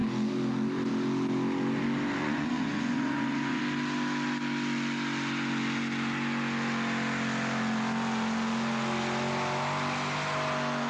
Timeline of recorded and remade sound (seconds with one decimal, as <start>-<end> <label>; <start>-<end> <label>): 0.0-2.2 recorded; 2.2-3.6 remade; 3.6-10.9 recorded